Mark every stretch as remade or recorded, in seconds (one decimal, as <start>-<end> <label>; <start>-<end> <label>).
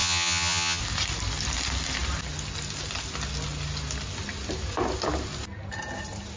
0.0-0.8 remade; 0.8-6.4 recorded